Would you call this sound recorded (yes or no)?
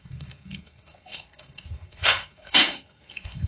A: no